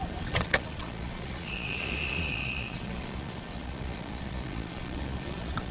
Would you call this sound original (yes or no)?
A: no